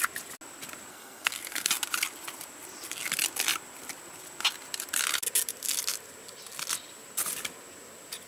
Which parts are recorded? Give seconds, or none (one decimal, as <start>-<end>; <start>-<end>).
0.0-0.9; 1.7-8.3